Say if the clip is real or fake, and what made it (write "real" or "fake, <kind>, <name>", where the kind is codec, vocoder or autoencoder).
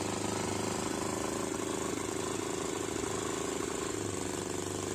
real